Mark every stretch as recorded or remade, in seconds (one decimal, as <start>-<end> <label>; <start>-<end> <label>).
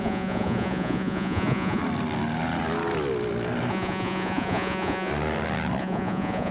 0.0-1.8 remade; 1.8-3.7 recorded; 3.7-5.1 remade; 5.1-5.8 recorded; 5.8-6.5 remade